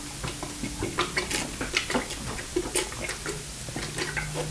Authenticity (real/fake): real